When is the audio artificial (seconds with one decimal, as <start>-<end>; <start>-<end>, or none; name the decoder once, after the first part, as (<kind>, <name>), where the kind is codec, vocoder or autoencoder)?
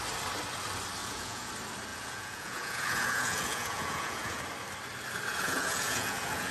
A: 1.0-1.5 (vocoder, Vocos); 1.9-4.4; 5.3-6.5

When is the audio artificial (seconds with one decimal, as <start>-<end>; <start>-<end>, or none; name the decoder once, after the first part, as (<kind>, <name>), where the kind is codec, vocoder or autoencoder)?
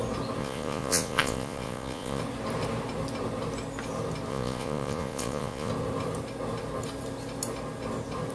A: 0.4-2.2 (vocoder, Vocos); 4.3-5.7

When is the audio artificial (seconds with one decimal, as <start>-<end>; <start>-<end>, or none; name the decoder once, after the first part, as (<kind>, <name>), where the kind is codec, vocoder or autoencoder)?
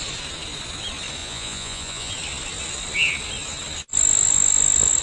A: 1.2-2.1 (vocoder, Vocos)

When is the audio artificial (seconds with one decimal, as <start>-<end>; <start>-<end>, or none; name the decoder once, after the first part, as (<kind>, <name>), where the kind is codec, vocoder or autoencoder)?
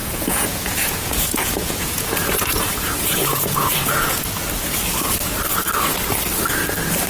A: 0.0-4.3 (vocoder, Vocos)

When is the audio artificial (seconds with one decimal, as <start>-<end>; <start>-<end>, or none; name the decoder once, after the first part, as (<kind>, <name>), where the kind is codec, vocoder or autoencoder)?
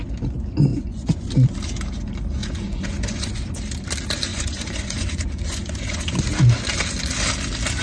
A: 0.7-1.3 (vocoder, Vocos); 2.4-3.6; 4.3-6.2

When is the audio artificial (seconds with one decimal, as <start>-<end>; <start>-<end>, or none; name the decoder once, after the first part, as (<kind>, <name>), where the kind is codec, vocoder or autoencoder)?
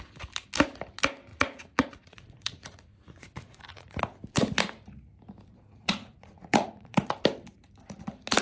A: 1.3-4.0 (vocoder, Vocos); 5.7-7.1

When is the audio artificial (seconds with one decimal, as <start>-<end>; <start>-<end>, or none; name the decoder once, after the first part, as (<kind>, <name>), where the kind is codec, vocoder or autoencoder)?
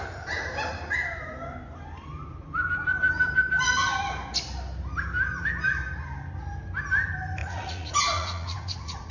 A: 7.4-9.1 (vocoder, Vocos)